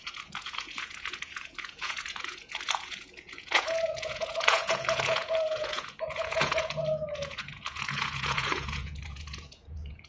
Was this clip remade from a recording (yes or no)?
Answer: yes